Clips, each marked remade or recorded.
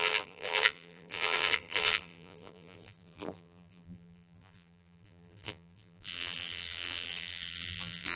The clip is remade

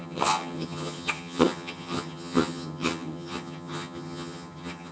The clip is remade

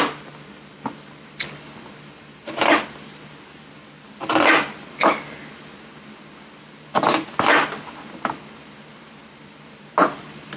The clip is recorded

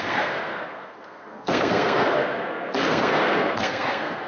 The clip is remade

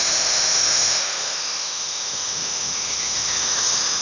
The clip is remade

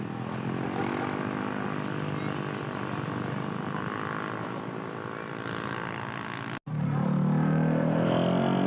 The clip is recorded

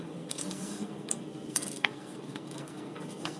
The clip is remade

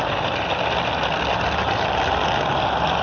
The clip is recorded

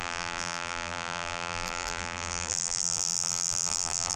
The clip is remade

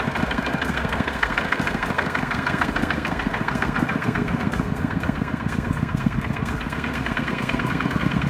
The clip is remade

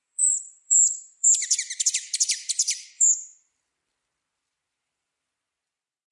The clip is remade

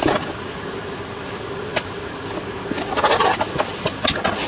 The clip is recorded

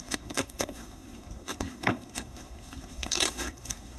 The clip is remade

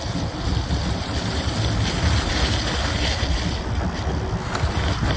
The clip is recorded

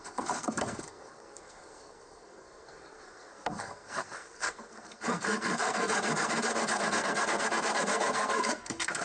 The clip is remade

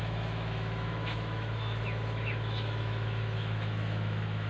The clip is remade